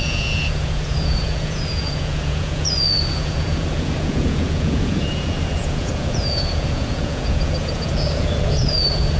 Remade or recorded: remade